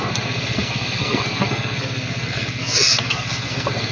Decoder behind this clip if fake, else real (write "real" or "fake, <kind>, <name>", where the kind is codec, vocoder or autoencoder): fake, codec, SNAC